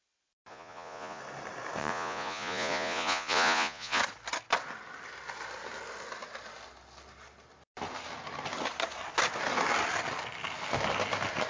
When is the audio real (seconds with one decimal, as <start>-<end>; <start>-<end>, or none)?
0.0-0.5; 1.2-1.8; 4.0-11.5